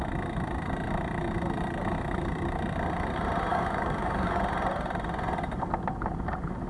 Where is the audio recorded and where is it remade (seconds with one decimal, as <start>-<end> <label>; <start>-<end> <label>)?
0.0-3.5 recorded; 3.5-4.4 remade; 4.4-6.7 recorded